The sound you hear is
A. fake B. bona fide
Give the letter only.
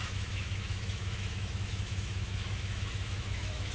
A